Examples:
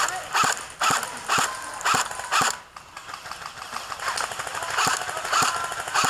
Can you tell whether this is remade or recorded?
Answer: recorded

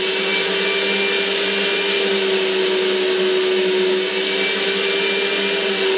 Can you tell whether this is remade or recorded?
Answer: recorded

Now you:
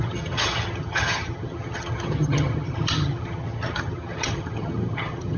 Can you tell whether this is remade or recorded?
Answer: remade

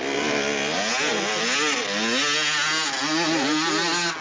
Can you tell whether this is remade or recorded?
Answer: recorded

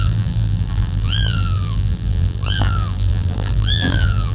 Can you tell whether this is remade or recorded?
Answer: remade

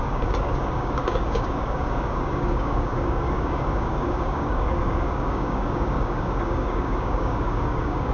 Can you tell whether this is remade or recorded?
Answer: remade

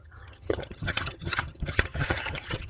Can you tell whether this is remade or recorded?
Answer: remade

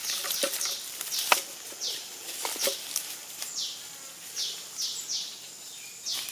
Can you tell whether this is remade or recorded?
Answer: recorded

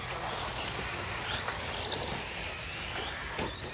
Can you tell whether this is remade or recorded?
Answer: recorded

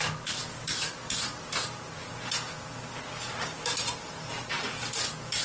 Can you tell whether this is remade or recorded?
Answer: recorded